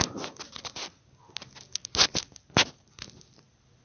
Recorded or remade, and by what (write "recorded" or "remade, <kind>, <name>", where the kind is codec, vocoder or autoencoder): recorded